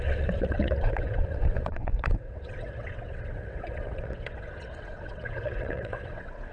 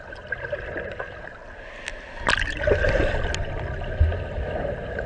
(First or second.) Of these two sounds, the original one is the second